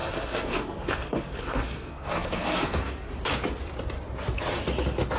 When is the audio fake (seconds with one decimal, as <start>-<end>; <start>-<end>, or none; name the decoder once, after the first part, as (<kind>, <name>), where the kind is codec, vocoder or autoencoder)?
0.0-3.1 (codec, SNAC)